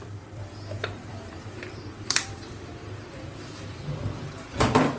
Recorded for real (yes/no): no